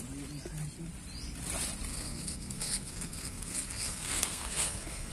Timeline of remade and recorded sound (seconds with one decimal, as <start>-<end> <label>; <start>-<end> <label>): 0.0-1.9 recorded; 1.9-5.1 remade